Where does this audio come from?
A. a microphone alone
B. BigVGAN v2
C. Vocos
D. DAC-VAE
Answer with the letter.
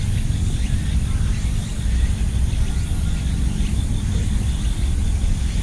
A